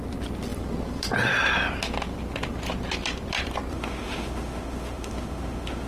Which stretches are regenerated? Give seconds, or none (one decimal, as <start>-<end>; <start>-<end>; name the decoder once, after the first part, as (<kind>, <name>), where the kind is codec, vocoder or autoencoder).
3.7-5.9 (autoencoder, DAC-VAE)